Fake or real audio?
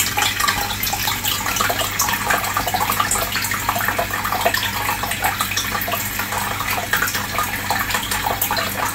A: real